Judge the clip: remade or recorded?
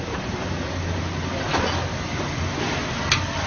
recorded